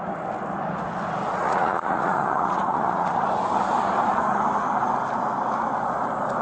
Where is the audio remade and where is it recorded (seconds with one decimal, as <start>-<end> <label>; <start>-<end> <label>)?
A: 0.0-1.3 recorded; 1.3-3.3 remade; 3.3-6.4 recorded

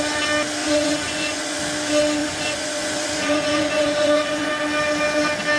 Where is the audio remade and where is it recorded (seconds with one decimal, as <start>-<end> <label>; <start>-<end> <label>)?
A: 0.0-0.6 recorded; 0.6-1.6 remade; 1.6-2.2 recorded; 2.2-4.5 remade; 4.5-5.6 recorded

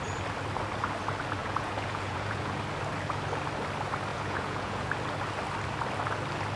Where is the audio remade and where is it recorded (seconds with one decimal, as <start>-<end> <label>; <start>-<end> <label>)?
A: 0.0-1.4 recorded; 1.4-2.6 remade; 2.6-4.1 recorded; 4.1-4.9 remade; 4.9-6.6 recorded

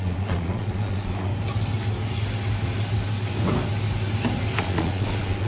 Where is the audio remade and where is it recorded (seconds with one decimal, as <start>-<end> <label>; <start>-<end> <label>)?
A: 0.0-1.3 remade; 1.3-4.6 recorded; 4.6-5.5 remade

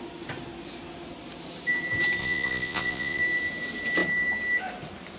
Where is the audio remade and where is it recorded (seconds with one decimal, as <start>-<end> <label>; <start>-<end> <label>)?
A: 0.0-2.2 recorded; 2.2-3.2 remade; 3.2-5.2 recorded